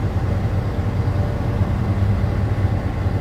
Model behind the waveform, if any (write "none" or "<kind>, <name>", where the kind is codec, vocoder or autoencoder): none